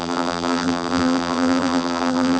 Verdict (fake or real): fake